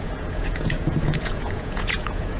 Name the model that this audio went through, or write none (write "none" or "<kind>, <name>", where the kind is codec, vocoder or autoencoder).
vocoder, Vocos